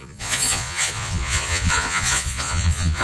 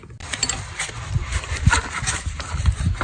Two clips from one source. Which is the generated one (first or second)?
first